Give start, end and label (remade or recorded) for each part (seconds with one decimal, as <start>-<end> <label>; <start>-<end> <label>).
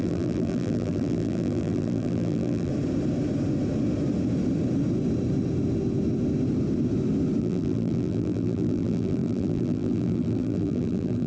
0.0-2.7 remade; 2.7-7.4 recorded; 7.4-11.3 remade